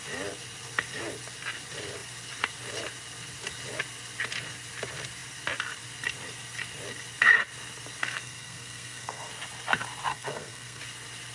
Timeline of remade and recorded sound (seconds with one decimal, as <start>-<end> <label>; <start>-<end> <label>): 0.0-8.0 recorded; 8.0-9.3 remade; 9.3-10.1 recorded; 10.1-10.8 remade; 10.8-11.3 recorded